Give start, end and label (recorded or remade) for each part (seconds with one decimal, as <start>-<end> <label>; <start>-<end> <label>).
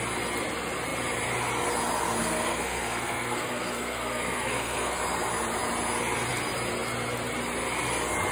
0.0-2.2 recorded; 2.2-5.0 remade; 5.0-8.3 recorded